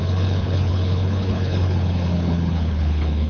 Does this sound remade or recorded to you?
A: remade